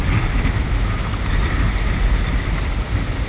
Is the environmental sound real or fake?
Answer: real